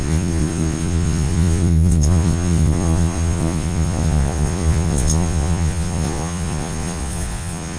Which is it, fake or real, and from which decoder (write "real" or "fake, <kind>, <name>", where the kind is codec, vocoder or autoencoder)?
fake, vocoder, Vocos